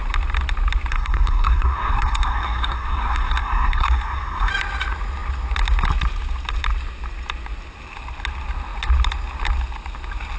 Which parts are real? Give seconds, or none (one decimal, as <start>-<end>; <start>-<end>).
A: 0.0-0.9; 4.5-10.4